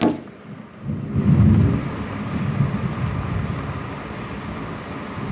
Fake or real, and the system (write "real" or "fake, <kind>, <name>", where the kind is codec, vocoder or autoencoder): real